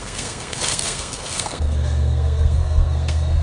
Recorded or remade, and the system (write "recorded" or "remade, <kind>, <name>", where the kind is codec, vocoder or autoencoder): remade, codec, SNAC